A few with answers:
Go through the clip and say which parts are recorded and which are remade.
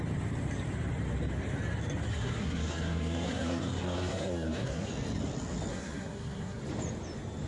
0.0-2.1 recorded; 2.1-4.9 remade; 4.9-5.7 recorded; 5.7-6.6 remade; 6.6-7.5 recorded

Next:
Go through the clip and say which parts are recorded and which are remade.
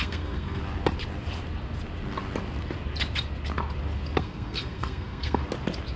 0.0-0.6 remade; 0.6-4.2 recorded; 4.2-5.4 remade; 5.4-6.0 recorded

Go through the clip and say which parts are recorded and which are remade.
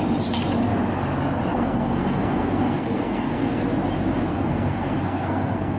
0.0-1.5 recorded; 1.5-3.6 remade; 3.6-4.3 recorded; 4.3-5.8 remade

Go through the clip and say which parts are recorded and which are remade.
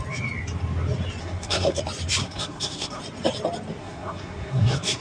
0.0-1.2 recorded; 1.2-1.8 remade; 1.8-2.2 recorded; 2.2-3.0 remade; 3.0-3.8 recorded; 3.8-5.0 remade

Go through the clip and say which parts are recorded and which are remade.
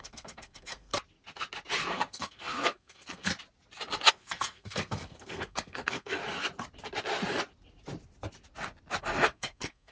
0.0-0.9 remade; 0.9-1.9 recorded; 1.9-3.3 remade; 3.3-4.1 recorded; 4.1-6.2 remade; 6.2-9.0 recorded; 9.0-9.9 remade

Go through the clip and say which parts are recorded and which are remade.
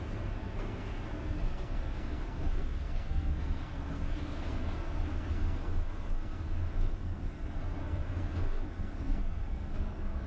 0.0-10.3 remade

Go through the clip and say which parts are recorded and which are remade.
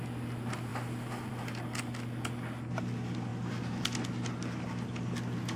0.0-5.6 recorded